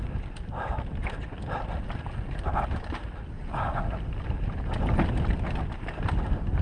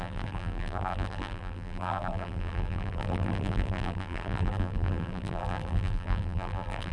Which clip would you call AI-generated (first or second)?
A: second